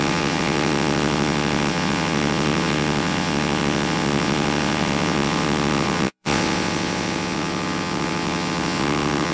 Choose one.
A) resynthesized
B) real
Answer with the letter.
A